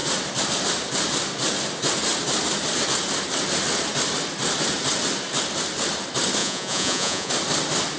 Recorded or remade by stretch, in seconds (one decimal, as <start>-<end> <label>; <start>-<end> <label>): 0.0-6.4 recorded; 6.4-7.3 remade; 7.3-8.0 recorded